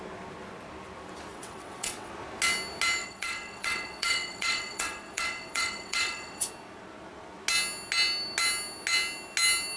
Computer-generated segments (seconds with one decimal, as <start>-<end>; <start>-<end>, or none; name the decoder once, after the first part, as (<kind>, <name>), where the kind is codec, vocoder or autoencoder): 1.3-2.1 (vocoder, WaveNeXt); 3.0-6.5